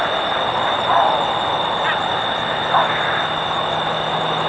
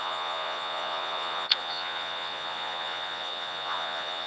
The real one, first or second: first